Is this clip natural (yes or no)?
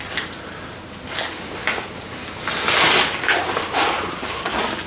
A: yes